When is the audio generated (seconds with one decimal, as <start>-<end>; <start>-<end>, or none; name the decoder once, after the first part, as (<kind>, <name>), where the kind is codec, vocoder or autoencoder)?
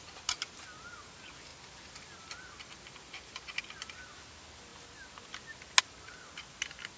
none